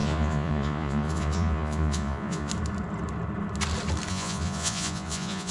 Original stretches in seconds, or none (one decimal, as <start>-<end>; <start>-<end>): 2.5-4.1